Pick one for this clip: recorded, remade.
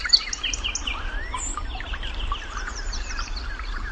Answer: remade